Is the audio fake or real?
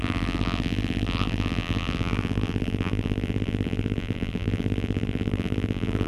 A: fake